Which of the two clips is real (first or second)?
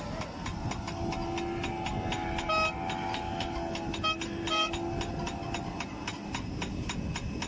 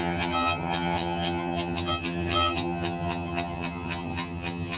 first